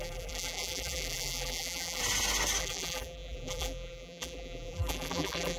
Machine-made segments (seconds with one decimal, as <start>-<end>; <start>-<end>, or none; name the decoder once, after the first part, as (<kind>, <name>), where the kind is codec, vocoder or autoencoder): 0.0-2.0 (vocoder, BigVGAN v2); 2.6-5.6